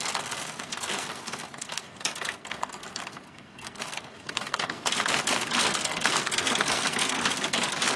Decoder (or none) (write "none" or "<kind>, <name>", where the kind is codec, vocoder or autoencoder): codec, SNAC